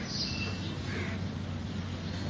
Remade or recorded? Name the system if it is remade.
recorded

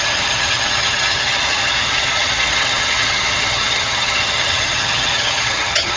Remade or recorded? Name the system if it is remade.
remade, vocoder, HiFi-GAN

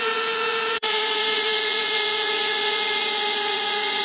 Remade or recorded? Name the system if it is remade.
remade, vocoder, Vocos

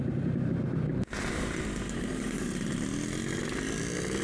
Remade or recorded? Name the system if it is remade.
recorded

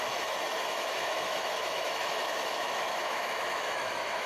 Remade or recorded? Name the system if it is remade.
remade, autoencoder, DAC-VAE